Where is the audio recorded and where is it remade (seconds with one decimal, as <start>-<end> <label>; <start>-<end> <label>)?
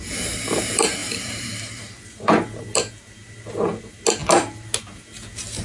0.0-1.0 recorded; 1.0-2.6 remade; 2.6-5.6 recorded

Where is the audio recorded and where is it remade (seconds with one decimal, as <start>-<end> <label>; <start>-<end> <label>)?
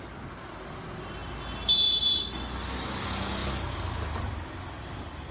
0.0-5.3 recorded